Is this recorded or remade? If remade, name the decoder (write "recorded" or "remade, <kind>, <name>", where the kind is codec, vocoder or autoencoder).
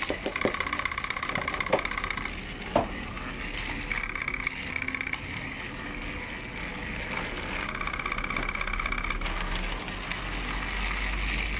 recorded